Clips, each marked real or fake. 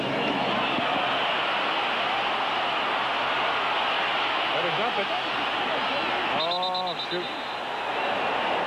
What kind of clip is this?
real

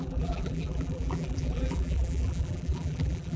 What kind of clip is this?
fake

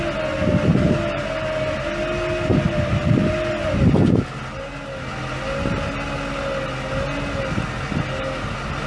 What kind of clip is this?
real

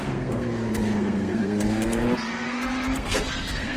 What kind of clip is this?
fake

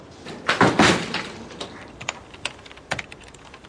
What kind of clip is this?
fake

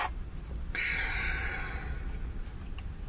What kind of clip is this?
real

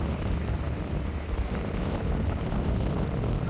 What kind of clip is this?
real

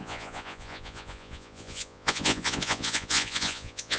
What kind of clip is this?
fake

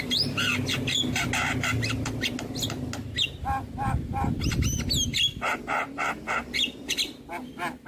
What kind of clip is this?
real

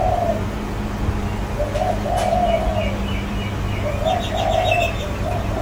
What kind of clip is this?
real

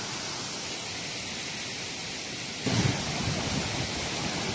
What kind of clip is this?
real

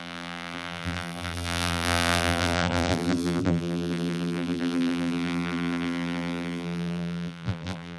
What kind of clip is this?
fake